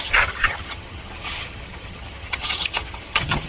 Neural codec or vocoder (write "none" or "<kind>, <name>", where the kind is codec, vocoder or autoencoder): vocoder, HiFi-GAN